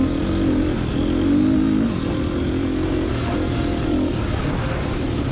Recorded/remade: recorded